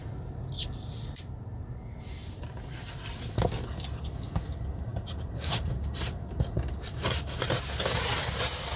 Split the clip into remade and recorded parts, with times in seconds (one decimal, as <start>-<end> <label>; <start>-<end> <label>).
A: 0.0-4.9 recorded; 4.9-6.3 remade; 6.3-8.8 recorded